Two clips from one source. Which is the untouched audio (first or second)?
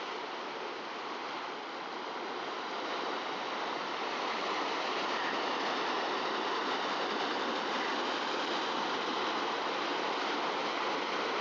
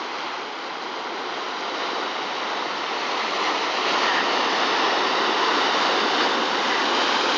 second